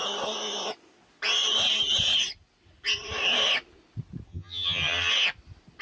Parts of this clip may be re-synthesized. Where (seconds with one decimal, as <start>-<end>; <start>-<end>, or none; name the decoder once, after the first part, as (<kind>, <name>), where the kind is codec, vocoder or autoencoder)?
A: 4.3-5.1 (vocoder, HiFi-GAN)